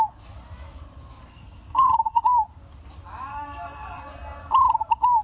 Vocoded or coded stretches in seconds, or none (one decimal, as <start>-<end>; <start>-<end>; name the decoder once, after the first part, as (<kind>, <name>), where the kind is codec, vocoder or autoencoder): 1.3-2.2 (codec, SNAC); 3.3-4.0